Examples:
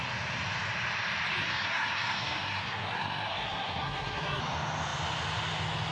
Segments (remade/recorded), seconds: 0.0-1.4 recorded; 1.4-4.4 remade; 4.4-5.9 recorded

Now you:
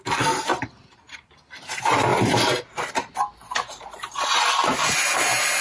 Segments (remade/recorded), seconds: 0.0-5.6 recorded

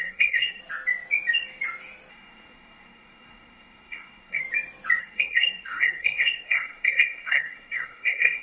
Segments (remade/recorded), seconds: 0.0-0.6 remade; 0.6-2.1 recorded; 2.1-4.4 remade; 4.4-5.0 recorded; 5.0-8.4 remade

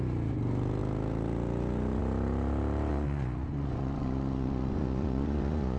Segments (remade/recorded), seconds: 0.0-2.9 recorded; 2.9-5.8 remade

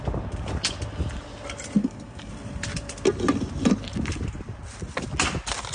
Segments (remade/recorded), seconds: 0.0-1.8 recorded; 1.8-2.3 remade; 2.3-5.7 recorded

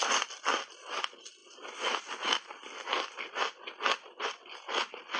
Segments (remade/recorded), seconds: 0.0-5.2 recorded

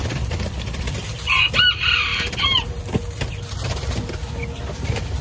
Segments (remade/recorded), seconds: 0.0-1.1 remade; 1.1-2.1 recorded; 2.1-2.8 remade; 2.8-5.2 recorded

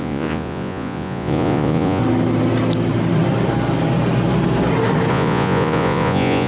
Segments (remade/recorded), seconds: 0.0-2.0 remade; 2.0-5.1 recorded; 5.1-6.5 remade